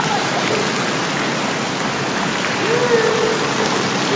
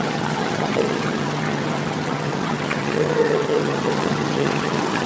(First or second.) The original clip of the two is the first